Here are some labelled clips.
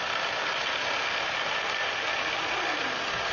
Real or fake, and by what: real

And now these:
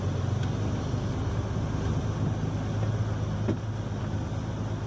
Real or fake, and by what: real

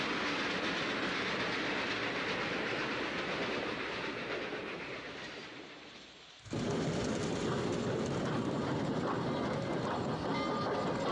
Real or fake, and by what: real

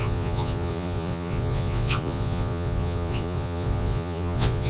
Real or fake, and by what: fake, vocoder, Vocos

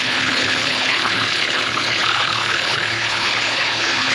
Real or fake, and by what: fake, codec, HILCodec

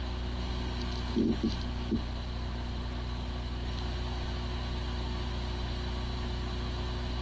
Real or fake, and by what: real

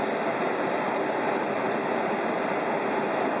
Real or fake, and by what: real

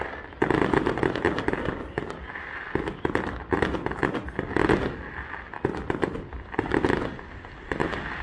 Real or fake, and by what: real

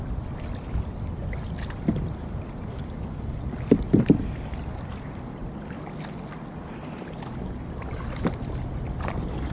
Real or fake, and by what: real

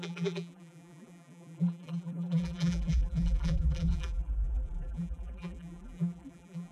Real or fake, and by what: fake, vocoder, BigVGAN v2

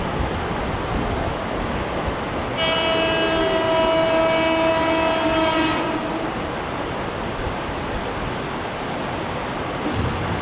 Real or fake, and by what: real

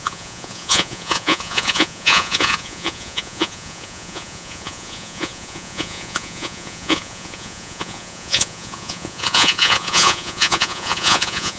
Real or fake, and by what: fake, vocoder, Vocos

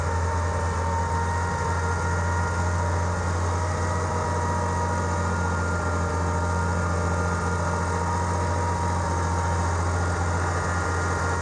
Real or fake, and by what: real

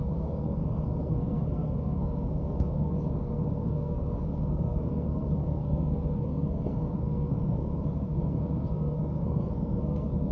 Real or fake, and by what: fake, codec, SNAC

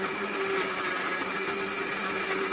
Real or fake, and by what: real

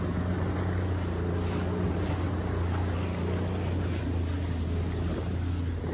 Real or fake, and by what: real